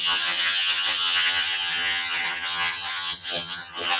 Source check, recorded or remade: remade